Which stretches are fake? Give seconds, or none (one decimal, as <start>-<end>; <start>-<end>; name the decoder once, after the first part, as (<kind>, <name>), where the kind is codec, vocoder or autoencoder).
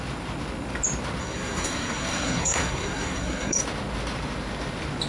1.2-3.6 (codec, SNAC)